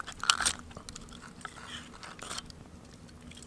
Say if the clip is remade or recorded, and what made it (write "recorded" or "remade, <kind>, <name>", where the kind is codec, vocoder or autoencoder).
recorded